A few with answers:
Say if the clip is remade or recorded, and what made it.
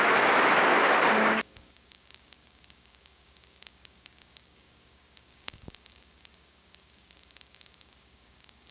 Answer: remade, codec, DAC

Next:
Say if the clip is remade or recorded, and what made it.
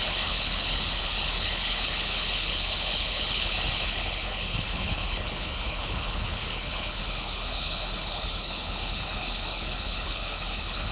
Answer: remade, codec, HILCodec